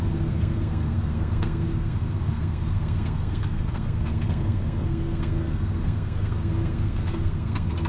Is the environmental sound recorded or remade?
remade